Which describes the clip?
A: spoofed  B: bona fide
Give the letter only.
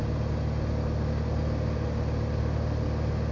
B